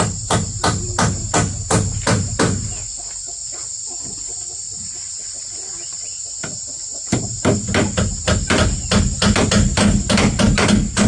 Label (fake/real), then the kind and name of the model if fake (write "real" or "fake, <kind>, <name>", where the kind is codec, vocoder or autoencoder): real